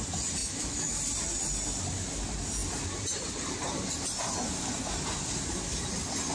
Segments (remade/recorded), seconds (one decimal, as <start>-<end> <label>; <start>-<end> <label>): 0.0-0.4 recorded; 0.4-1.0 remade; 1.0-6.3 recorded